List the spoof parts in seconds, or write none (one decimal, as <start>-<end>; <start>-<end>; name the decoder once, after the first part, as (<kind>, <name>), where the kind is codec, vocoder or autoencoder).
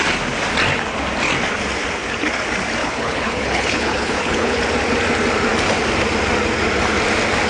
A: 2.8-4.6 (codec, HILCodec)